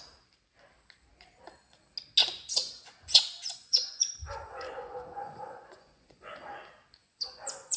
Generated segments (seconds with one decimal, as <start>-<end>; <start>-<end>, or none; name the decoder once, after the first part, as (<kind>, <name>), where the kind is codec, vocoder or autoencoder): 2.2-6.6 (vocoder, Vocos); 7.0-7.8